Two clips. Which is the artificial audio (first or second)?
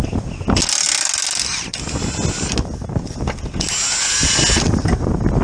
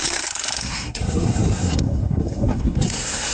second